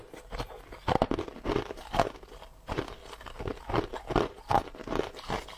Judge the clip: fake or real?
real